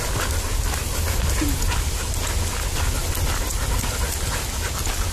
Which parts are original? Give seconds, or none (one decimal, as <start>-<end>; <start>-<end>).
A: 0.0-5.1